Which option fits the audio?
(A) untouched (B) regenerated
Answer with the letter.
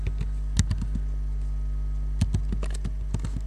A